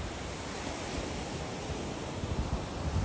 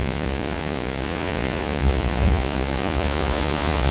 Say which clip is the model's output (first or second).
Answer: second